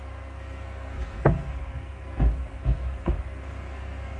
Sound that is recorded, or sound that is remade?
remade